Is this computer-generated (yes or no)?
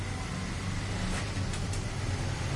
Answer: no